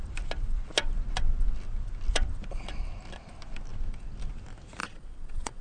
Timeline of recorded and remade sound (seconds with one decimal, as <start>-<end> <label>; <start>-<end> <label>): 0.0-4.8 recorded; 4.8-5.6 remade